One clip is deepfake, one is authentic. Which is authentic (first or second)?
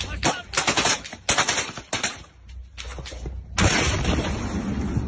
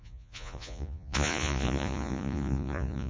first